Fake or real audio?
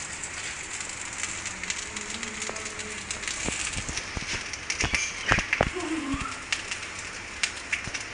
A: real